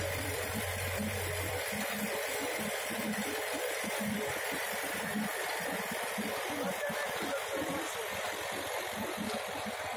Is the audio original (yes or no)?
no